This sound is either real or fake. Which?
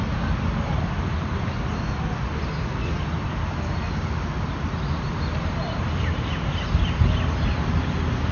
real